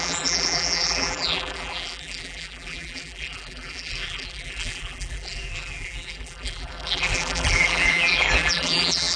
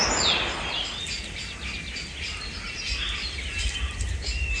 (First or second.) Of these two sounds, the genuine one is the second